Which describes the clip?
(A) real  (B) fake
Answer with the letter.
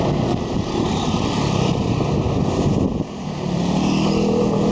A